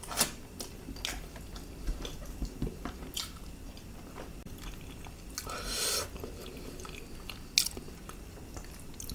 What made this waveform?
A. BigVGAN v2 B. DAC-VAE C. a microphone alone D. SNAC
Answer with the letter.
C